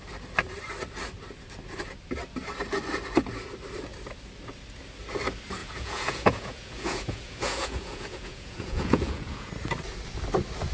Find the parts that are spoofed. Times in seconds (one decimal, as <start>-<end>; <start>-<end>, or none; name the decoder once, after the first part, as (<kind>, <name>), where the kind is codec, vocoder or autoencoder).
5.6-9.5 (vocoder, Vocos)

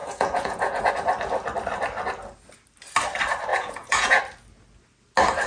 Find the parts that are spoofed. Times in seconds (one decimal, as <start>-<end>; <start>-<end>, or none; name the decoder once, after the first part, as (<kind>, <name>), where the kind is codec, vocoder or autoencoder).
0.0-0.9 (vocoder, Vocos); 3.5-4.2

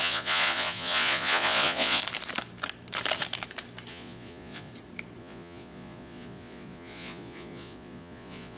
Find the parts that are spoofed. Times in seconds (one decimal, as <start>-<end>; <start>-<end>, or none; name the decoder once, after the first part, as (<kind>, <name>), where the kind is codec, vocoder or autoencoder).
0.0-2.0 (vocoder, Vocos); 3.9-4.7; 5.2-8.6

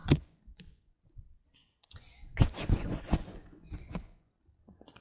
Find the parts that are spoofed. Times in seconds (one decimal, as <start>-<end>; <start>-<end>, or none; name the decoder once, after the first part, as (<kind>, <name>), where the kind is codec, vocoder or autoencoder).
0.0-1.0 (vocoder, Vocos); 1.6-4.3

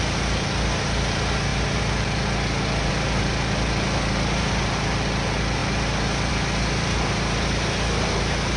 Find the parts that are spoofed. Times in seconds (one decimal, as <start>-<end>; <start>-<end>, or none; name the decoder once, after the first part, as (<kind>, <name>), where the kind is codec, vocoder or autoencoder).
none